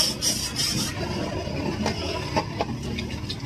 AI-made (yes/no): no